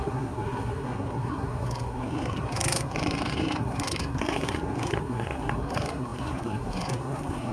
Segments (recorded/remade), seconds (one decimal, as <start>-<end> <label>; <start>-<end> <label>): 0.0-7.5 remade